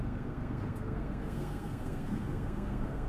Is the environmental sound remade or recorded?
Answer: remade